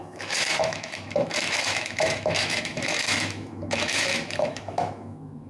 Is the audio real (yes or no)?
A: no